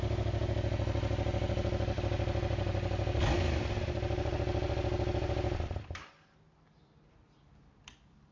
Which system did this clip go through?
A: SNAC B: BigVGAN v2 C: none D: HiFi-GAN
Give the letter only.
C